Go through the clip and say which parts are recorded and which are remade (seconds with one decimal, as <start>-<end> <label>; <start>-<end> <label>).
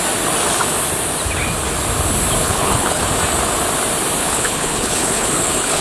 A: 0.0-2.4 recorded; 2.4-3.0 remade; 3.0-4.2 recorded; 4.2-5.8 remade